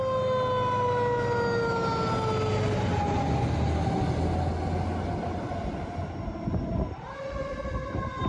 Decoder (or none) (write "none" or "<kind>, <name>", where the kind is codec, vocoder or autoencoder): none